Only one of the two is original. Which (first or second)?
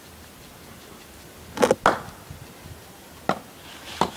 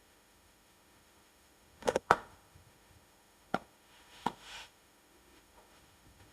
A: first